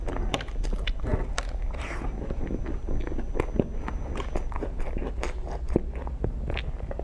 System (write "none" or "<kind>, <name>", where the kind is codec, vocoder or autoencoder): none